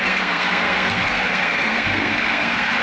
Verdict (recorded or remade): remade